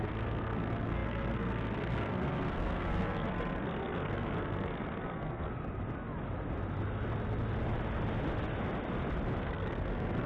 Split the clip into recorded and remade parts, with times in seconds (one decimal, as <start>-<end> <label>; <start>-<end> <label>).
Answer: 0.0-5.5 remade; 5.5-9.4 recorded; 9.4-10.3 remade